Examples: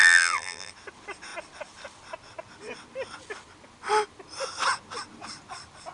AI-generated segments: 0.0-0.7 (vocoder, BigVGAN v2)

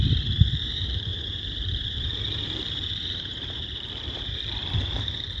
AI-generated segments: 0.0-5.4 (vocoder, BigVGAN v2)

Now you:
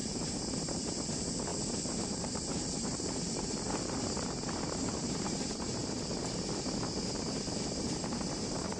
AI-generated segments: 0.0-5.8 (vocoder, BigVGAN v2); 7.8-8.8

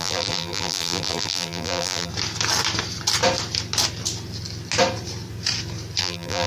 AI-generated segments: 0.0-2.1 (vocoder, BigVGAN v2); 6.0-6.5

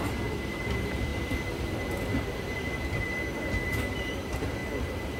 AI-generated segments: 0.0-4.6 (vocoder, BigVGAN v2)